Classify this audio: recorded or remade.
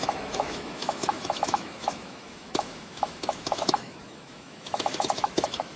remade